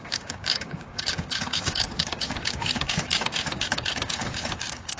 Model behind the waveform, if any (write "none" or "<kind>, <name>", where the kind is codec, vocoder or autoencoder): codec, DAC